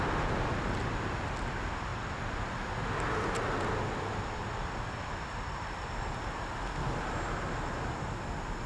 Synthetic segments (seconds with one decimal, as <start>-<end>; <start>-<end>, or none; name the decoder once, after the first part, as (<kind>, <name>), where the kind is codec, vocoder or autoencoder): none